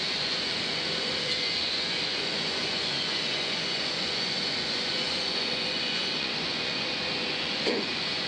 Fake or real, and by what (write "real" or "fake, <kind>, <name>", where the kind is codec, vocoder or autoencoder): fake, vocoder, Vocos